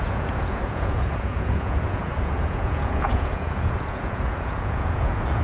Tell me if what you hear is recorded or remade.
remade